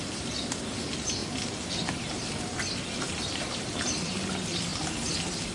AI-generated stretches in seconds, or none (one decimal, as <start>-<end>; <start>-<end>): 0.0-1.2; 3.2-4.7